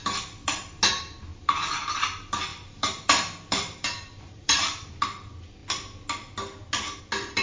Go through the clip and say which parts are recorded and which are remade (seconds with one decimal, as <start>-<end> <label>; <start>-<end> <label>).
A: 0.0-1.3 recorded; 1.3-1.9 remade; 1.9-2.5 recorded; 2.5-4.9 remade; 4.9-7.4 recorded